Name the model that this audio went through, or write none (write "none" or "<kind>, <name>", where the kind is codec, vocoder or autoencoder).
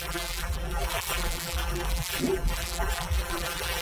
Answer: vocoder, BigVGAN v2